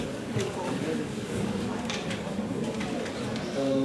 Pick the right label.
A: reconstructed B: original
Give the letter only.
A